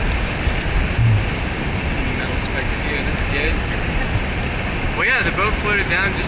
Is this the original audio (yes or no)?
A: yes